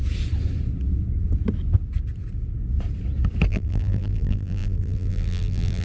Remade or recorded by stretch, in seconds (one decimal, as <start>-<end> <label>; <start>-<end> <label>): 0.0-3.5 recorded; 3.5-5.8 remade